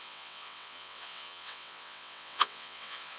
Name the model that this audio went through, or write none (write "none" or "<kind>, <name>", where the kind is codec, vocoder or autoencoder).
vocoder, WaveNeXt